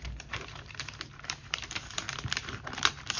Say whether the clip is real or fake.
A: fake